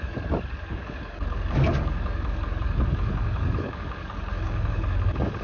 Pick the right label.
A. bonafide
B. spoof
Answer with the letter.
B